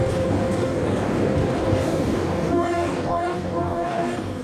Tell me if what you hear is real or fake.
fake